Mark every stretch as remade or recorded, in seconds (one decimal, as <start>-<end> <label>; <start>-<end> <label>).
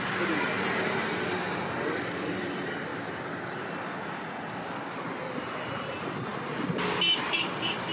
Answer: 0.0-7.9 recorded